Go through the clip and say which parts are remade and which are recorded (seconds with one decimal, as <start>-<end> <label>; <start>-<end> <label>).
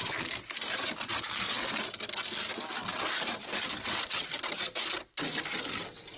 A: 0.0-6.2 recorded